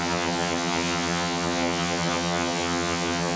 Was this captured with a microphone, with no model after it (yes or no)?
no